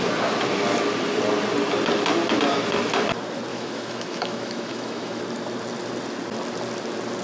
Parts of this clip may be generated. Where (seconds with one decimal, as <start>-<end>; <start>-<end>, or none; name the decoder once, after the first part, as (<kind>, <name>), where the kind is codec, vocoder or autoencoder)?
3.5-5.2 (autoencoder, DAC-VAE)